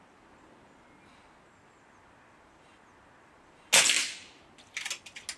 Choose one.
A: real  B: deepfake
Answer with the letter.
A